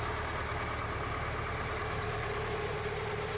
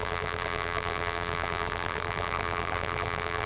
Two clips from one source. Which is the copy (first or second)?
second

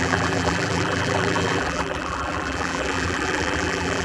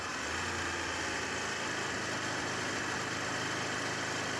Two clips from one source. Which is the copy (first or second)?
first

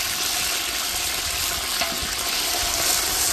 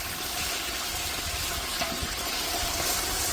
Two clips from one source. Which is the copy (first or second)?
second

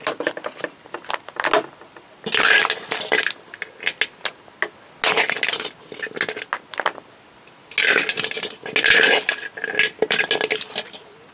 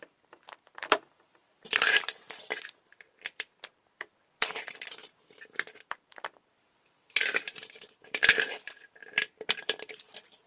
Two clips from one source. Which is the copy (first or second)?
second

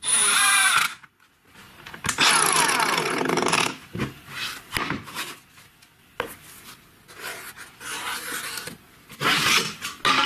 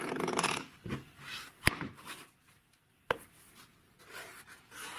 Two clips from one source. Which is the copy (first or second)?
second